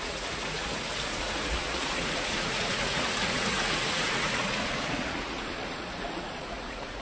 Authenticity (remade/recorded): remade